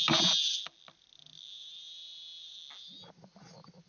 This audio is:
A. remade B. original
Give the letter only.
B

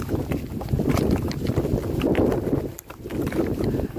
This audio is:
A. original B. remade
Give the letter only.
A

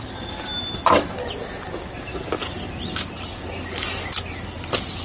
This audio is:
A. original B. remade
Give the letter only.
A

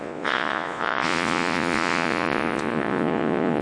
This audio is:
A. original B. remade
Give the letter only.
B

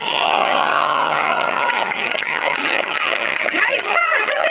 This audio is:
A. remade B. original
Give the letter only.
A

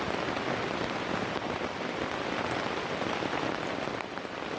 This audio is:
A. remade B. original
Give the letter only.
B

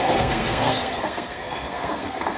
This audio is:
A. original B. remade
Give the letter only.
B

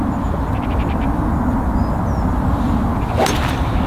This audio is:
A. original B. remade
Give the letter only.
A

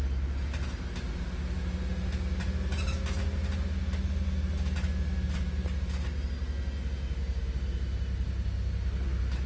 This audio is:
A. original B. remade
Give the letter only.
A